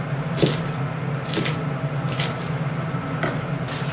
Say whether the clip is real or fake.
real